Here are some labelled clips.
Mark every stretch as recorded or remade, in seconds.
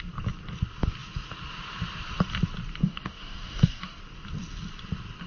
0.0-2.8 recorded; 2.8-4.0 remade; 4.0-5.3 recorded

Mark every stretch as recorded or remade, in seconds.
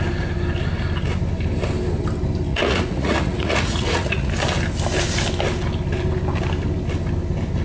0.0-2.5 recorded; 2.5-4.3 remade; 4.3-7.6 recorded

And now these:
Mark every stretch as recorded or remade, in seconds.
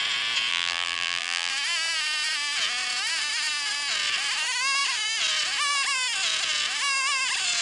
0.0-0.5 recorded; 0.5-1.5 remade; 1.5-7.6 recorded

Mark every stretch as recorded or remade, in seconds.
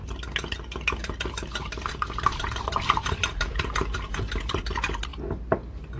0.0-1.0 recorded; 1.0-4.6 remade; 4.6-5.1 recorded; 5.1-6.0 remade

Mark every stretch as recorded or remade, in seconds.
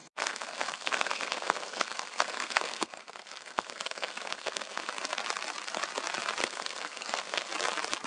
0.0-4.9 remade; 4.9-6.4 recorded; 6.4-7.5 remade; 7.5-8.1 recorded